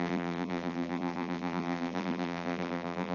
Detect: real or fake fake